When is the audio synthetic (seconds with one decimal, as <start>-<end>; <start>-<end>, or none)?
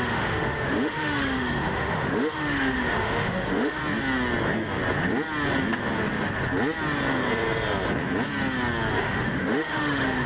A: 0.0-3.8; 9.0-10.3